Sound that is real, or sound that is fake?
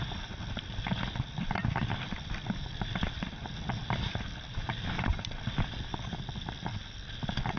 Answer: fake